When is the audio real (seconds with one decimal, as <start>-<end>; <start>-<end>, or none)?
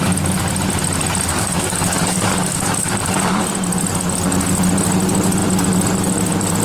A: 0.0-1.3; 3.4-6.6